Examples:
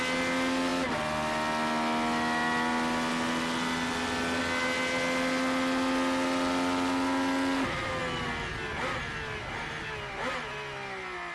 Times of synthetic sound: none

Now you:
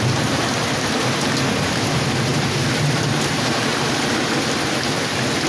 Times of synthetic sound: 2.3-3.2 (vocoder, BigVGAN v2); 3.7-4.3

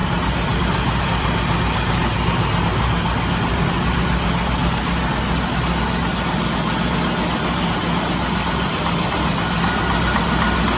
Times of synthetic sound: none

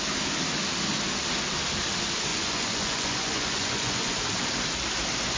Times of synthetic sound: 2.3-4.2 (vocoder, Vocos)

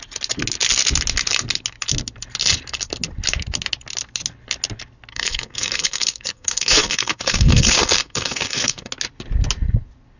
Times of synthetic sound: 5.1-8.9 (codec, SNAC)

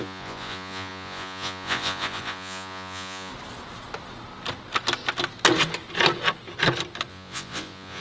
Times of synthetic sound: 0.0-3.3 (vocoder, Vocos); 7.1-8.0

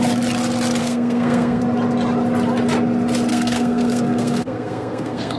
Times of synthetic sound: 0.8-1.6 (codec, SNAC); 3.3-5.4

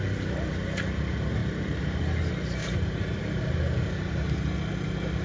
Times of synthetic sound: 1.4-2.0 (vocoder, BigVGAN v2); 2.6-3.2